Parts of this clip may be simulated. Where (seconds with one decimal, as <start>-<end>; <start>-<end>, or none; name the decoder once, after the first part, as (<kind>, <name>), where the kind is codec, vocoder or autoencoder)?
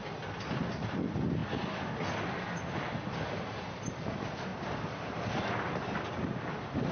none